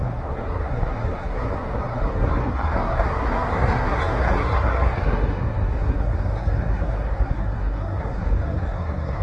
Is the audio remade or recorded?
remade